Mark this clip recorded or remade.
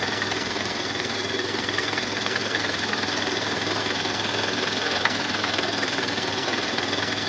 remade